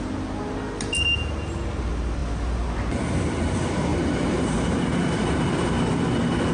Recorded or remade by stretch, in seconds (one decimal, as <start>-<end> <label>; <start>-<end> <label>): 0.0-3.9 recorded; 3.9-5.7 remade; 5.7-6.5 recorded